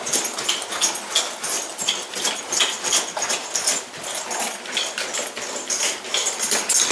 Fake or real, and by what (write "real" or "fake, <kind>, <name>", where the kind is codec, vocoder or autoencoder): real